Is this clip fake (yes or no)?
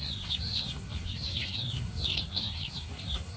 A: yes